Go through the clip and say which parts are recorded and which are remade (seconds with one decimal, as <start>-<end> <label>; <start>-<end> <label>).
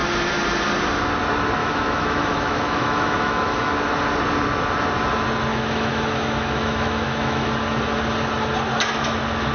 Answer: 0.0-1.6 recorded; 1.6-3.7 remade; 3.7-5.5 recorded; 5.5-7.5 remade; 7.5-9.5 recorded